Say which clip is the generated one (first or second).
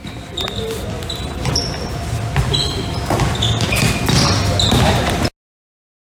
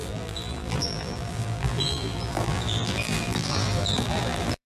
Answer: second